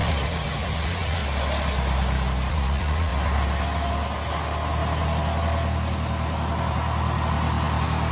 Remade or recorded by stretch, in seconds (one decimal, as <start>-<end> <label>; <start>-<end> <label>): 0.0-1.2 remade; 1.2-2.5 recorded; 2.5-3.1 remade; 3.1-8.1 recorded